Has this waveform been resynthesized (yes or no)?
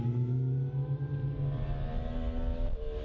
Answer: no